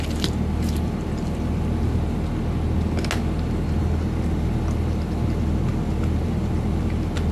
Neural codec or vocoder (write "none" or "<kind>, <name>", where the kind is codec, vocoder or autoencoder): none